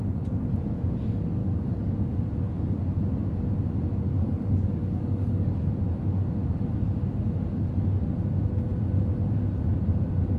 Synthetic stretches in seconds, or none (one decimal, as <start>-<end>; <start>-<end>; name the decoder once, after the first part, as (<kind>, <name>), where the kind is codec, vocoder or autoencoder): 1.4-2.1 (codec, DAC); 4.1-5.7